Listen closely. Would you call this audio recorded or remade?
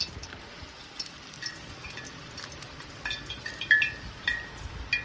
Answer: recorded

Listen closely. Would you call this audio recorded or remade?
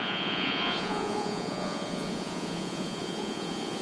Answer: remade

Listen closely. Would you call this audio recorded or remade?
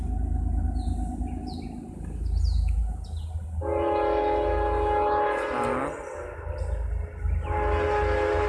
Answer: recorded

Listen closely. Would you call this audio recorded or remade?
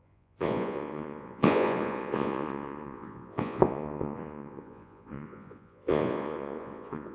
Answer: remade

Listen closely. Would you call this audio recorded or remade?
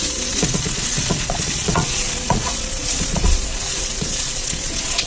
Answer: remade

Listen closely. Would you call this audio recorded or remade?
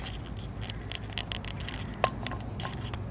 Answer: recorded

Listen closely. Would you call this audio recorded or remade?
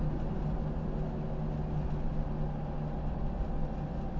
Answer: recorded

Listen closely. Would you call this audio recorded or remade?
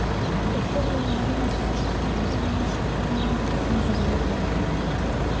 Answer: recorded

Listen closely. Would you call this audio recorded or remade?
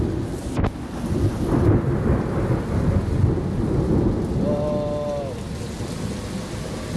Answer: recorded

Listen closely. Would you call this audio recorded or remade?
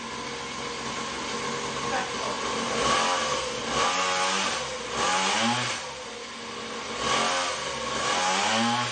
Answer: recorded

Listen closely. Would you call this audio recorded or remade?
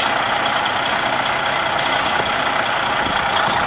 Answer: recorded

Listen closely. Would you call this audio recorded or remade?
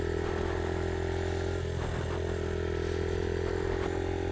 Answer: recorded